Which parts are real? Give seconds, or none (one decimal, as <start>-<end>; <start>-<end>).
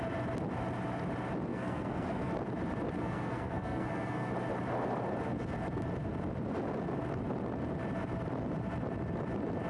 0.0-1.5; 2.3-3.0; 4.3-9.7